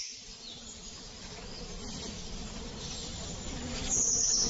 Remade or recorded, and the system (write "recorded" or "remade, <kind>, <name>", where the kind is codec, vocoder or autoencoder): remade, vocoder, BigVGAN v2